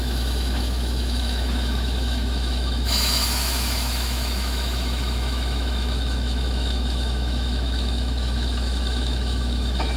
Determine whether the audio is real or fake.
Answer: fake